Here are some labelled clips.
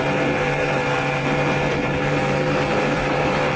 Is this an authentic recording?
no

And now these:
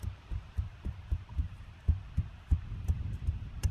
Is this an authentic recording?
no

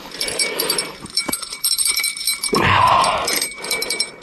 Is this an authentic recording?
no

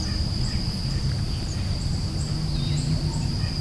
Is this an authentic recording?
no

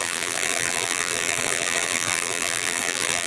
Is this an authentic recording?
no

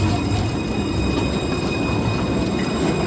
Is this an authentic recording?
yes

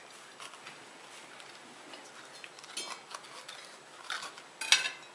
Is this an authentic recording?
yes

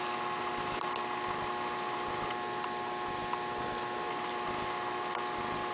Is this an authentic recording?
yes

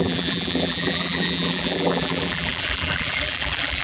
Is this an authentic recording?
no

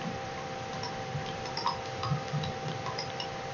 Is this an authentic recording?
no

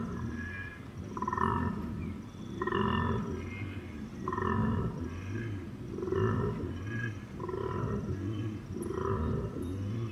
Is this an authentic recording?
yes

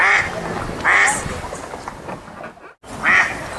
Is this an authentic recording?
yes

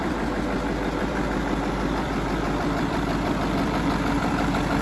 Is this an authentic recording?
no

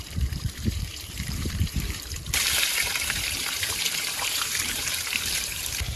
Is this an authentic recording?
no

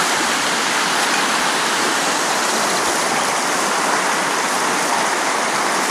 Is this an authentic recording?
no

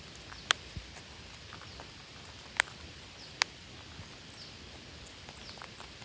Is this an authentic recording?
yes